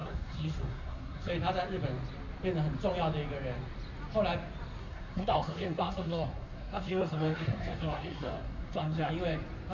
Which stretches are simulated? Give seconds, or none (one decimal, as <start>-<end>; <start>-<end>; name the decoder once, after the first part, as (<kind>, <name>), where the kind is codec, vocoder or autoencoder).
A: 0.0-1.3 (codec, SNAC); 4.8-9.1